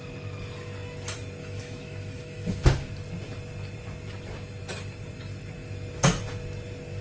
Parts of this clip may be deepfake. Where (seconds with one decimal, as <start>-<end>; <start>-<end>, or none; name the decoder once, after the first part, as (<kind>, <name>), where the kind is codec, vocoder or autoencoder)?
1.4-2.9 (autoencoder, DAC-VAE)